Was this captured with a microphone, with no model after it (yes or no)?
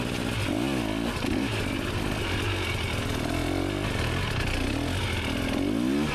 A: yes